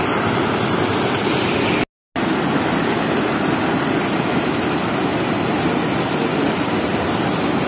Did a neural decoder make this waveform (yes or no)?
no